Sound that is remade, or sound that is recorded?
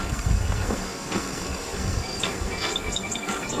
remade